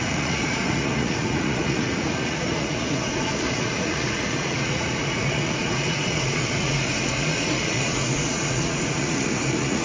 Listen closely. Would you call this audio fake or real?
fake